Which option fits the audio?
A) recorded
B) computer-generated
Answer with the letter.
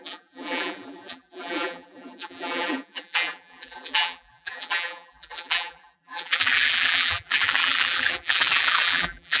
B